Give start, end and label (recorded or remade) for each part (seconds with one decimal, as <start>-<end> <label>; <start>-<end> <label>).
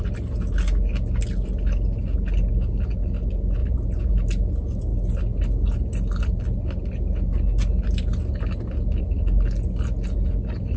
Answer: 0.0-3.6 recorded; 3.6-4.1 remade; 4.1-10.8 recorded